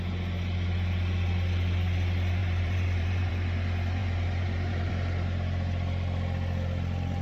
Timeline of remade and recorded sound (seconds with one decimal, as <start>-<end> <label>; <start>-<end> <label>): 0.0-2.4 recorded; 2.4-3.3 remade; 3.3-4.0 recorded; 4.0-4.9 remade; 4.9-7.2 recorded